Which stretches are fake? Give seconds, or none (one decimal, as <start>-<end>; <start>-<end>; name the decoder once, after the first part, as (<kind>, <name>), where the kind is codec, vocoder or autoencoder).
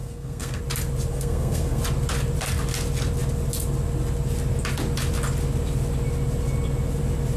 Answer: 0.0-0.6 (codec, SNAC); 1.1-1.8